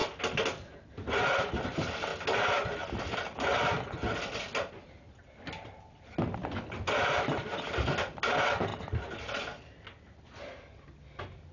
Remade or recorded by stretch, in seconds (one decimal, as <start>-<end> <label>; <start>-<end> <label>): 0.0-11.5 recorded